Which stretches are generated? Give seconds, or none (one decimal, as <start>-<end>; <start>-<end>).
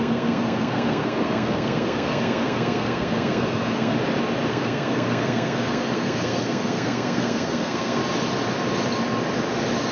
0.0-3.9; 4.5-8.0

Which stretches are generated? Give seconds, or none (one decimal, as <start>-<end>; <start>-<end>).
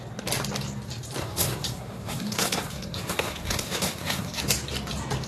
1.2-4.4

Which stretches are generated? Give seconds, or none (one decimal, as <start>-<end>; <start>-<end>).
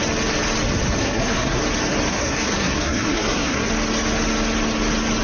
1.0-1.6; 2.1-3.7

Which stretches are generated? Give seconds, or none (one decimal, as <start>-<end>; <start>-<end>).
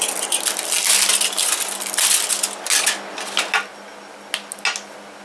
none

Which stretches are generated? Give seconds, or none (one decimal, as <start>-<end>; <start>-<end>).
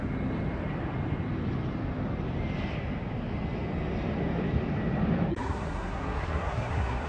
5.3-7.1